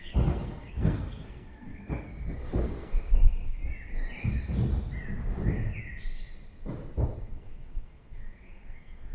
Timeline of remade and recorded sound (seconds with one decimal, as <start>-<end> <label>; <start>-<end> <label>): 0.0-3.6 remade; 3.6-7.2 recorded; 7.2-9.1 remade